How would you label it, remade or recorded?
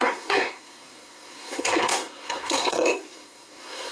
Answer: remade